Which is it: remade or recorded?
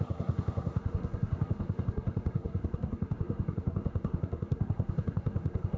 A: remade